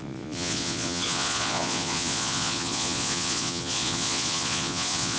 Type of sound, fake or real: fake